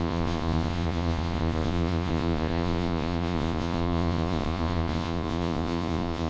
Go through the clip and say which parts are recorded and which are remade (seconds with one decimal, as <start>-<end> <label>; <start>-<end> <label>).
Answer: 0.0-6.3 remade